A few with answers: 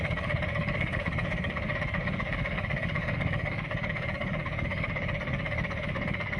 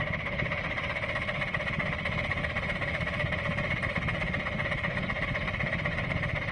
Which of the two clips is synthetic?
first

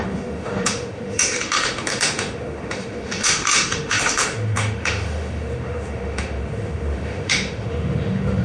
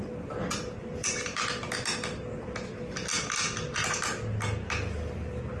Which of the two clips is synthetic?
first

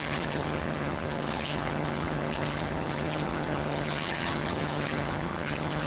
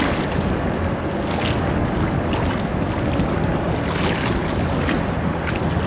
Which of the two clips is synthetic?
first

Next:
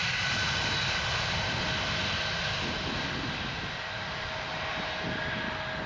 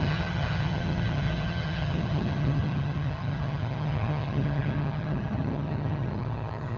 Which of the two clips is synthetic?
second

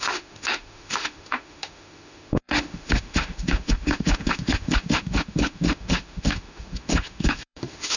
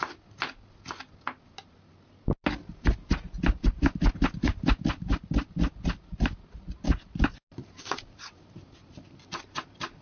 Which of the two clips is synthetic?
first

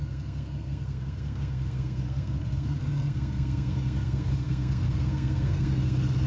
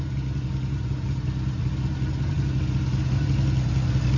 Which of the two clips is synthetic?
first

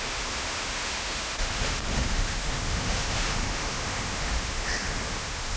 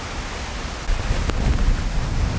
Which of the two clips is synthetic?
first